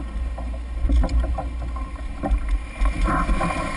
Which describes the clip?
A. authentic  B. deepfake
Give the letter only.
A